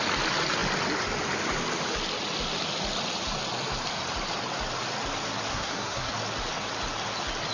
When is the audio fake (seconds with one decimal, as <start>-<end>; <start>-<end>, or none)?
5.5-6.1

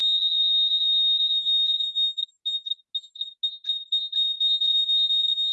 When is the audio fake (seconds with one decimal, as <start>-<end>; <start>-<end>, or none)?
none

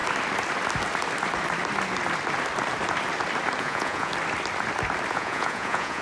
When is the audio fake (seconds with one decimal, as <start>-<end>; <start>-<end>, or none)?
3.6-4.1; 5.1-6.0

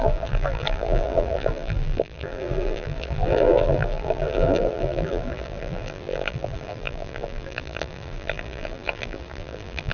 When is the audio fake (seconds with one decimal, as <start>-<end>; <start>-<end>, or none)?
0.0-9.9